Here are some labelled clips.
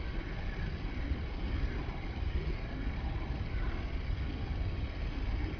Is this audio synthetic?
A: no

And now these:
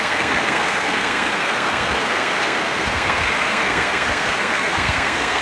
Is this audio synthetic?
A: yes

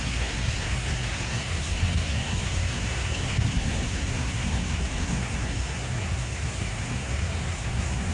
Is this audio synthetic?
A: yes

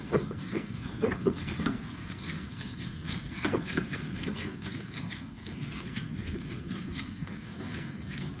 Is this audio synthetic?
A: yes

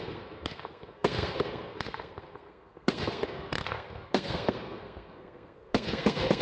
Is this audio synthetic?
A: yes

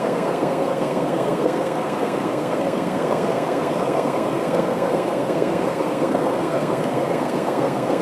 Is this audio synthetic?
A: yes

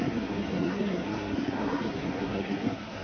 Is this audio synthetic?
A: yes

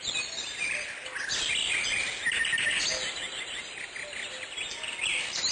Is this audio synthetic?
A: no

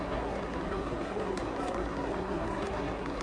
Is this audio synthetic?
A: yes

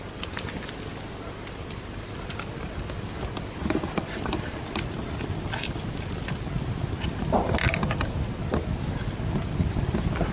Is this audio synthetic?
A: no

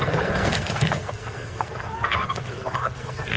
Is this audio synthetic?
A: yes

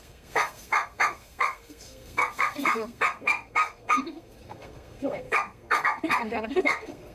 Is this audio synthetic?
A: yes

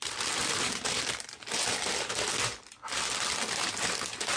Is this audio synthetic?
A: no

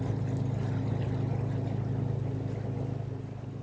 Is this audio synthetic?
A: no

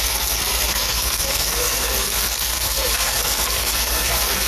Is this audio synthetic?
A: yes